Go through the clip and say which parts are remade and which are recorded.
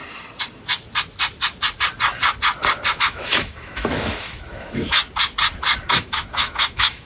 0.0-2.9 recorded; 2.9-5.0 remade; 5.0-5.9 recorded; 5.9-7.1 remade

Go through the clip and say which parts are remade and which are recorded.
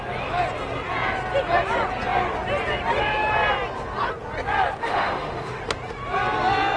0.0-4.8 recorded; 4.8-5.6 remade; 5.6-6.8 recorded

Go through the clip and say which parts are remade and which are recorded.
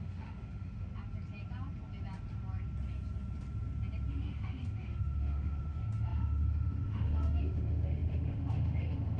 0.0-0.9 remade; 0.9-4.1 recorded; 4.1-9.2 remade